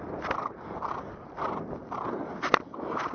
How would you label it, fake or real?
real